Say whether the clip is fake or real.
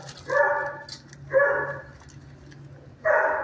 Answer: real